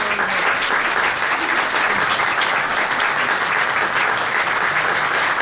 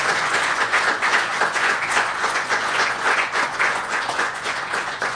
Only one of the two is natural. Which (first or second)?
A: first